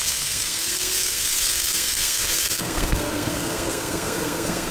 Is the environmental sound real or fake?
fake